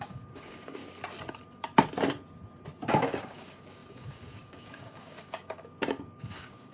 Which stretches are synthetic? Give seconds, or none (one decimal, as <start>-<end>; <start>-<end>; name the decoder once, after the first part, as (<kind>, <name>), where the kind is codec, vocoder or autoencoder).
0.0-0.8 (codec, DAC); 2.9-6.7